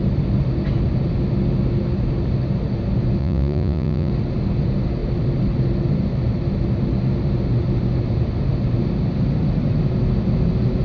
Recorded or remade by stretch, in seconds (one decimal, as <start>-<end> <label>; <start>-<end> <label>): 0.0-3.2 recorded; 3.2-4.1 remade; 4.1-10.8 recorded